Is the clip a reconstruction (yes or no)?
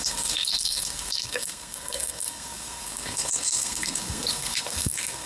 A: yes